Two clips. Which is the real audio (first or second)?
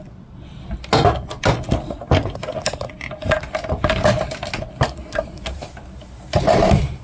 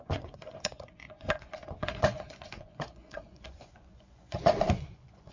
first